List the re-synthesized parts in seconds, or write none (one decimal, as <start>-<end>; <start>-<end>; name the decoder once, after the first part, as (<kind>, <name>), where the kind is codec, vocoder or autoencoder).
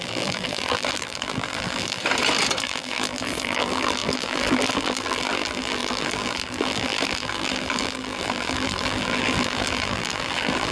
0.0-2.0 (vocoder, BigVGAN v2); 2.6-10.7